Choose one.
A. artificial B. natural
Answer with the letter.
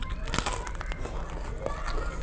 B